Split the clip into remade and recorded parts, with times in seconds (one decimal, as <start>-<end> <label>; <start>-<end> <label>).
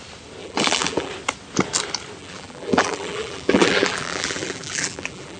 0.0-0.4 recorded; 0.4-1.1 remade; 1.1-2.2 recorded; 2.2-5.4 remade